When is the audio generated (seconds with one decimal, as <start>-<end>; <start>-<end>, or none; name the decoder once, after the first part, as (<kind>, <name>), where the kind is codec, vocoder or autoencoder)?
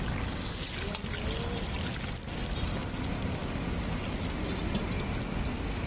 none